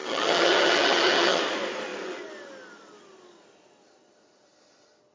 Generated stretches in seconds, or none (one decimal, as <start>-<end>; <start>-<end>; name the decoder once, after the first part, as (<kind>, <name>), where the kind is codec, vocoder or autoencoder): 0.0-1.4 (vocoder, HiFi-GAN)